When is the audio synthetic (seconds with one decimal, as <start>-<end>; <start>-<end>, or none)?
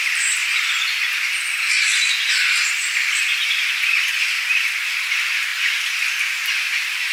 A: none